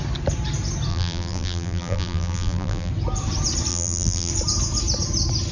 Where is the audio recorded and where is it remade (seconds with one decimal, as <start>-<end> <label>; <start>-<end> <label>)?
0.0-0.9 recorded; 0.9-2.9 remade; 2.9-3.7 recorded; 3.7-4.3 remade; 4.3-5.5 recorded